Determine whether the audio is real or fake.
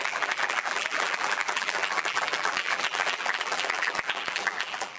fake